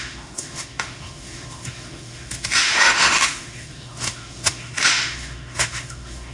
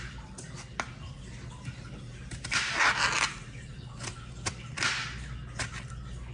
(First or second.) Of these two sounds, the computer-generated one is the first